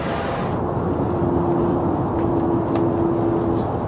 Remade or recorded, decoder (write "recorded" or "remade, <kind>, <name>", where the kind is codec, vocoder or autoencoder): recorded